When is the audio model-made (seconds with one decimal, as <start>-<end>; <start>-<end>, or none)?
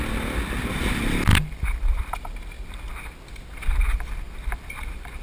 none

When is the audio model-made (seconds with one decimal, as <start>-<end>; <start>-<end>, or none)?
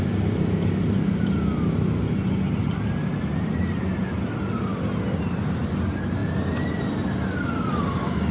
none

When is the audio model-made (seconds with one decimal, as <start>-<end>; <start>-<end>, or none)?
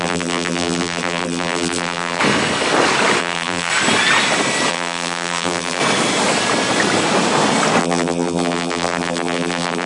0.0-2.2; 3.2-3.7; 4.7-5.8; 7.8-9.9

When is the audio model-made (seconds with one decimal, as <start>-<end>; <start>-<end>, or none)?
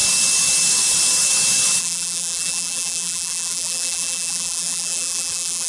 1.8-5.7